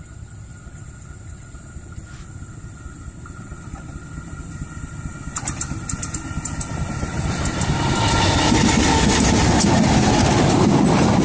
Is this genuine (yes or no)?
yes